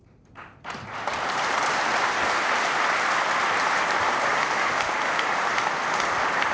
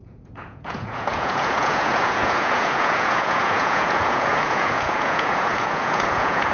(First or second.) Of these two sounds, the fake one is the second